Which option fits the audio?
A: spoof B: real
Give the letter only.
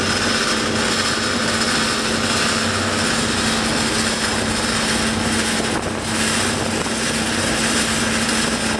B